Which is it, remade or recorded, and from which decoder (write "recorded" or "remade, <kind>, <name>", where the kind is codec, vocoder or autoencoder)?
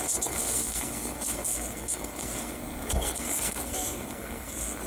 remade, codec, SNAC